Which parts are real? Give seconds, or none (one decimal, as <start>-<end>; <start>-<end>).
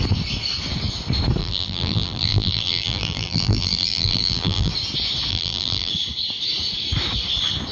0.0-1.4; 4.7-5.3; 5.9-7.7